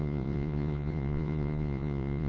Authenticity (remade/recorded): remade